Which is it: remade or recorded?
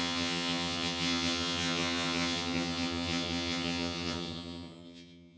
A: remade